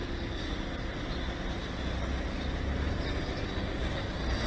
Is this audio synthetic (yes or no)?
no